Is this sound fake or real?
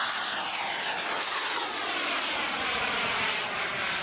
real